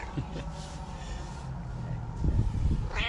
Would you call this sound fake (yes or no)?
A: no